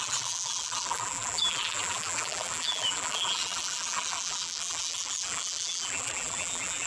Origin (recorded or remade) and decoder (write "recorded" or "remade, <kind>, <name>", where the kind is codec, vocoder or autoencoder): remade, vocoder, BigVGAN v2